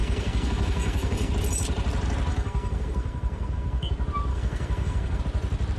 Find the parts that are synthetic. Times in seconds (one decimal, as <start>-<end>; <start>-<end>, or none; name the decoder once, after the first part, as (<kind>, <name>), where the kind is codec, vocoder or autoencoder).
0.0-1.3 (codec, SNAC); 2.3-3.9; 4.3-5.2